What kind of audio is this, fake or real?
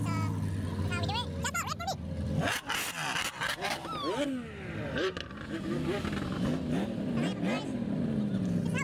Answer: real